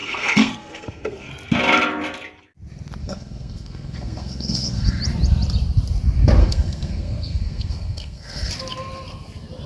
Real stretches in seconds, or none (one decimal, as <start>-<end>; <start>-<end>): 1.3-3.0; 5.0-6.4; 8.5-9.7